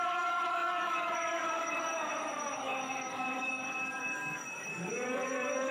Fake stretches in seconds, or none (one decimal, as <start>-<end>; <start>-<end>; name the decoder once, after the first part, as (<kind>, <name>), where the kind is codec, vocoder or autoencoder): 0.0-5.7 (codec, DAC)